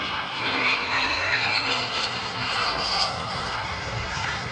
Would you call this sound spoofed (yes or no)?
yes